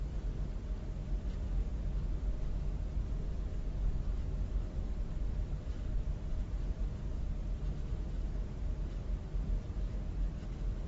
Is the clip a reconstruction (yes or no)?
yes